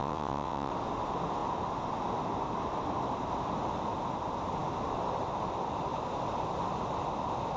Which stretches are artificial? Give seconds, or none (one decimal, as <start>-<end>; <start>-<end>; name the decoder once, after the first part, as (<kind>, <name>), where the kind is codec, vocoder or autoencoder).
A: 0.0-0.7 (vocoder, WaveNeXt)

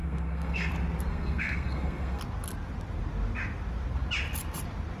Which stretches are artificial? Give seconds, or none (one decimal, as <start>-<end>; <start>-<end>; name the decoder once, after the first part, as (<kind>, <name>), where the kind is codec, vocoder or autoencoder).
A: 0.0-0.7 (codec, SNAC); 1.1-2.2

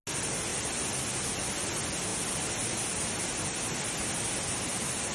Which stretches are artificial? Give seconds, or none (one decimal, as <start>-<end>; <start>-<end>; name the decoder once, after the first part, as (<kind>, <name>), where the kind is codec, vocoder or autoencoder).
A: none

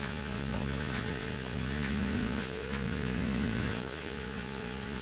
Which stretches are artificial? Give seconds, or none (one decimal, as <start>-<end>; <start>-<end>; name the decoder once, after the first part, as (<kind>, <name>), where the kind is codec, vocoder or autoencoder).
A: 0.0-5.0 (vocoder, Vocos)

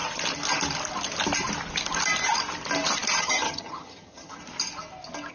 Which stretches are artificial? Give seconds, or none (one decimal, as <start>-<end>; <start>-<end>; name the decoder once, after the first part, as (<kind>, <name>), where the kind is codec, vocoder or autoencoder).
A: 3.2-4.4 (vocoder, HiFi-GAN)

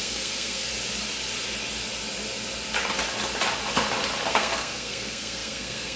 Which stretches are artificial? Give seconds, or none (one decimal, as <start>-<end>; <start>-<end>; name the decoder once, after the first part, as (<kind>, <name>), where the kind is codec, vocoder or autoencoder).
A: 0.0-0.7 (codec, SNAC); 4.3-6.0

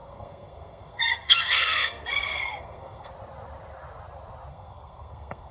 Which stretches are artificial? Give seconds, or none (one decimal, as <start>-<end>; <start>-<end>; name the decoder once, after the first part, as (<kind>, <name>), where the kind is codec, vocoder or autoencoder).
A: 0.0-3.1 (codec, SNAC); 4.5-5.5